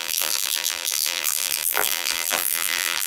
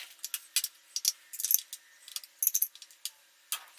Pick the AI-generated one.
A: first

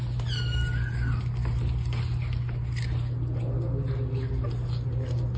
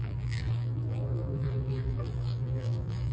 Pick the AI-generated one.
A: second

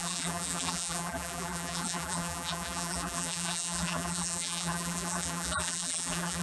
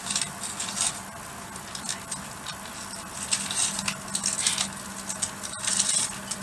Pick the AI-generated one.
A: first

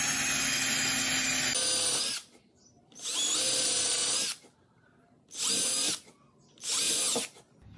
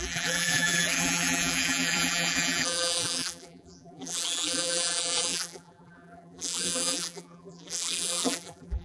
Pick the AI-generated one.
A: second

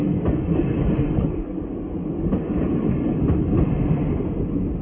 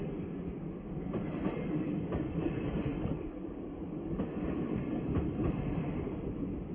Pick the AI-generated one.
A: second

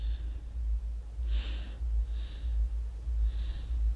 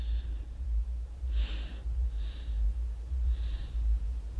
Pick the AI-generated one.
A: second